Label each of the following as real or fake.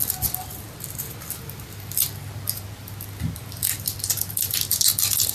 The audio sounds real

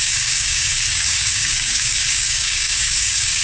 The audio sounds fake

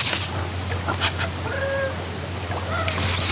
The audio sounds real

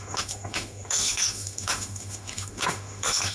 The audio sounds fake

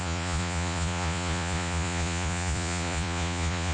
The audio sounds fake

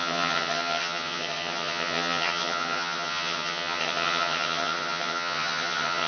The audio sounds fake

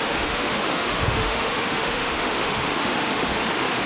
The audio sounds fake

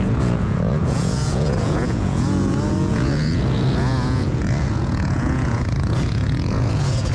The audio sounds fake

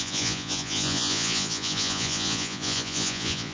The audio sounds fake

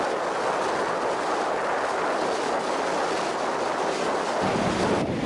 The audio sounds real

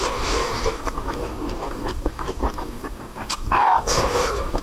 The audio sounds fake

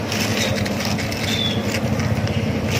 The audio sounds real